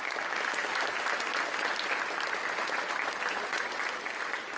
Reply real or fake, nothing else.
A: real